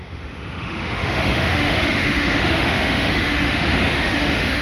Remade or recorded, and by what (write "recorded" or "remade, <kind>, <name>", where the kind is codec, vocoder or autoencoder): remade, autoencoder, DAC-VAE